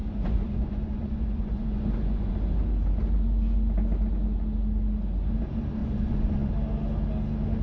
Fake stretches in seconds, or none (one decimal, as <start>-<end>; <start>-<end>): 0.0-2.3; 5.8-6.5